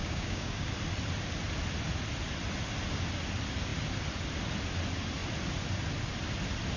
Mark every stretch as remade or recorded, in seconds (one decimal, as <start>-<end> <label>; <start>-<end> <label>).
0.0-0.7 remade; 0.7-6.8 recorded